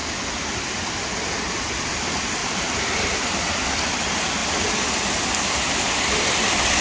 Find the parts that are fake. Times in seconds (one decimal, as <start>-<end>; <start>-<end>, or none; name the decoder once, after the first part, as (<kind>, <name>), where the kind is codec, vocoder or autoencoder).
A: 2.4-3.5 (vocoder, BigVGAN v2); 4.4-5.7